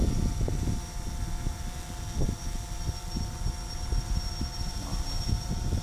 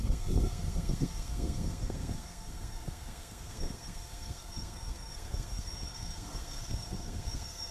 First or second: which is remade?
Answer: second